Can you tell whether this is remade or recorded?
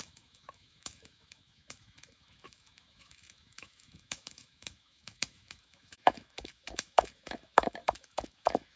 remade